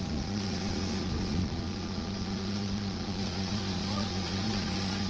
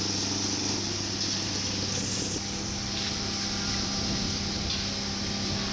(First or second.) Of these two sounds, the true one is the second